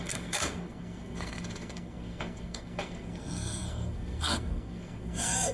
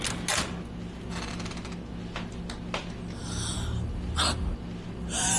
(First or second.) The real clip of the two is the second